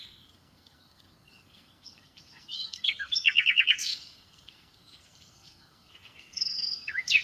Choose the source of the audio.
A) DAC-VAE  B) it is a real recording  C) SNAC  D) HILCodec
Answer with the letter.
C